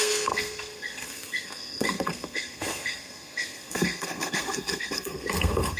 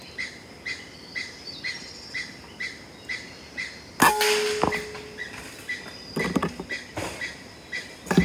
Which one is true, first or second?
second